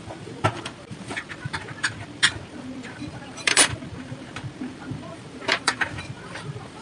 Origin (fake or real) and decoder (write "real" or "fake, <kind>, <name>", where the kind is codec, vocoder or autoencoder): fake, vocoder, BigVGAN v2